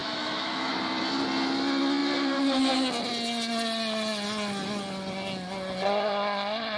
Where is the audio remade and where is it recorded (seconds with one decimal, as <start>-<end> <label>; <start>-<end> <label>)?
0.0-0.7 remade; 0.7-6.8 recorded